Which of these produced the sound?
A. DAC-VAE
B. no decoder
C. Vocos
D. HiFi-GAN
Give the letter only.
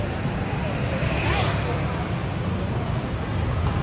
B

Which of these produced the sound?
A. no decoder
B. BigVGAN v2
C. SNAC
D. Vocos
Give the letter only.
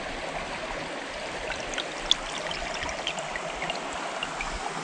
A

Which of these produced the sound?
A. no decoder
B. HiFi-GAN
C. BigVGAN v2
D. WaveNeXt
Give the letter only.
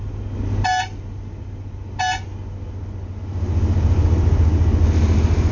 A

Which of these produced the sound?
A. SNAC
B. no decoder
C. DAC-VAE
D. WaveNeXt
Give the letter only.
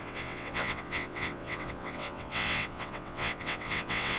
D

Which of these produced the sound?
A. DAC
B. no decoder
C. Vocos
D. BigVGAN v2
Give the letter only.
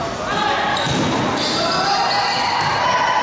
B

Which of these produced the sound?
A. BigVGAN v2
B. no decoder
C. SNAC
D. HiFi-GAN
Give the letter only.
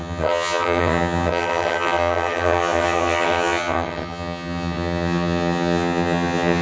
D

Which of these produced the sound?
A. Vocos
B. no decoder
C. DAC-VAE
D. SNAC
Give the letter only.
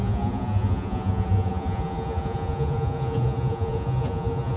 A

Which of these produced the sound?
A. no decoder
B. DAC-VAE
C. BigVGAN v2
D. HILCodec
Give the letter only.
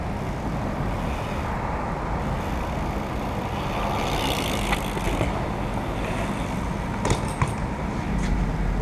A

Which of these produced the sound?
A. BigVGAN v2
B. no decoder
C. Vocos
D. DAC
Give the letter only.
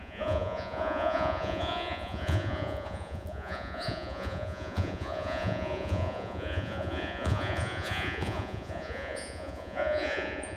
C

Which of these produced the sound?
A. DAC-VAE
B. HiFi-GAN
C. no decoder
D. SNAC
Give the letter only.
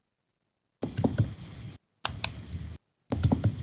C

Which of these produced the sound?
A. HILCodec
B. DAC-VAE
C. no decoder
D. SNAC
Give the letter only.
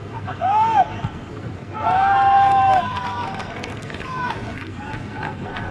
D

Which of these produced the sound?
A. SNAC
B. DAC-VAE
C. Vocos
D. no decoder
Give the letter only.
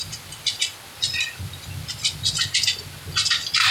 D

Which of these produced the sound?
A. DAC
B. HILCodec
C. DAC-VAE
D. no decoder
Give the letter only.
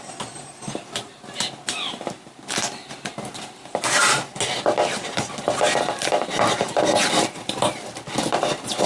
D